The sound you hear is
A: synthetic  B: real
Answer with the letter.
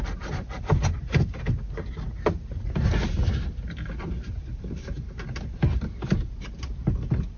B